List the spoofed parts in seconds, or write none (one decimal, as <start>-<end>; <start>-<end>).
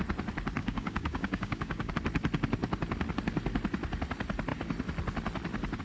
0.6-1.9